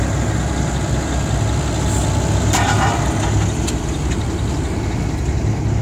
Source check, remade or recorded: recorded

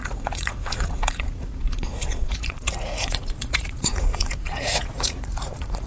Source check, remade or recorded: remade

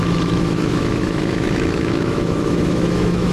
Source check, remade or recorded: remade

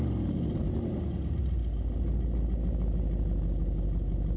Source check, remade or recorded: recorded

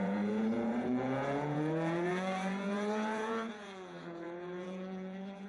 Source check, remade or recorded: remade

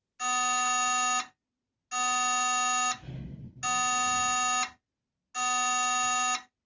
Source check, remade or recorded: recorded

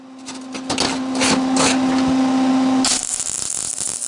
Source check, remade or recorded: recorded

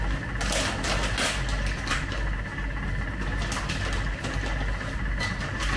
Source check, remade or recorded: recorded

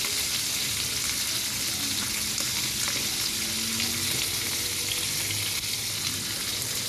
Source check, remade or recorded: recorded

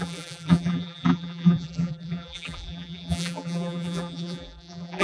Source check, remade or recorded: remade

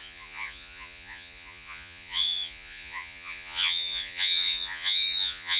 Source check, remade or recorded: remade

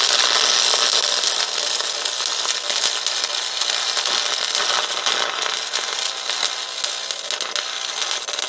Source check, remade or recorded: recorded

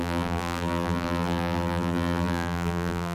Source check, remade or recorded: remade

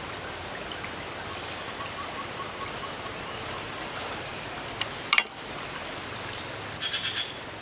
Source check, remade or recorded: recorded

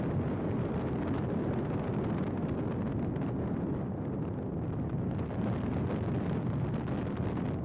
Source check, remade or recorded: recorded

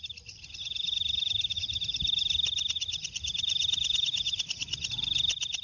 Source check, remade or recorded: recorded